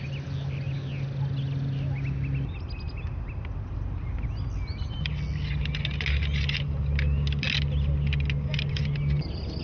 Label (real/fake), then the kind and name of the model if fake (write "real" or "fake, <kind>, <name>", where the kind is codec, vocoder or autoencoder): real